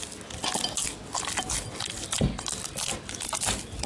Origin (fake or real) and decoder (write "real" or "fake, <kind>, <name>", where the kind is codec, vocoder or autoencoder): real